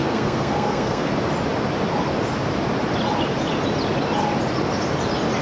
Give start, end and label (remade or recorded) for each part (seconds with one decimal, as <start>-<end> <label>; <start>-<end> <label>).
0.0-1.1 remade; 1.1-5.4 recorded